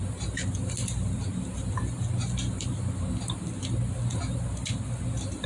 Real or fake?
real